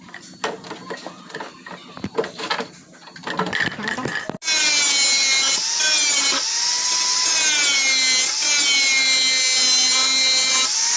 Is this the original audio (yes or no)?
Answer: yes